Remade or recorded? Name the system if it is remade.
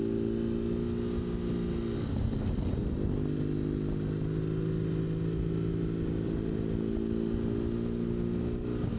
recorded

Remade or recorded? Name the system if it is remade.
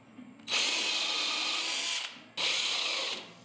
recorded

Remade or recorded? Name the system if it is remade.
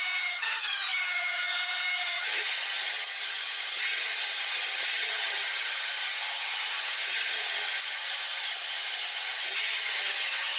remade, vocoder, HiFi-GAN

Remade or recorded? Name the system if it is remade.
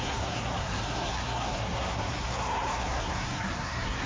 remade, codec, SNAC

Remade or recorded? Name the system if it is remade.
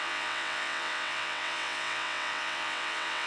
remade, vocoder, WaveNeXt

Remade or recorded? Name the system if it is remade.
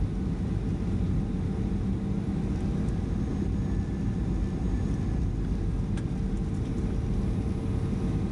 recorded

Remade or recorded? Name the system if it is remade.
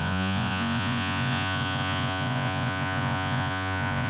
remade, vocoder, Vocos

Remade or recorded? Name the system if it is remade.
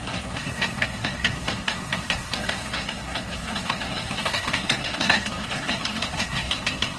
remade, codec, SNAC